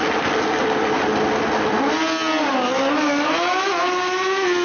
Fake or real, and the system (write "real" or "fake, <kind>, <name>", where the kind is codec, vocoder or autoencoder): real